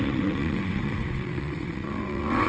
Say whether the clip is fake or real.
fake